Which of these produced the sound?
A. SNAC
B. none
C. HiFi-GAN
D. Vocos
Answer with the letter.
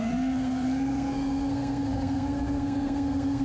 A